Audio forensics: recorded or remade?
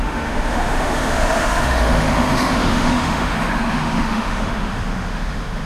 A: remade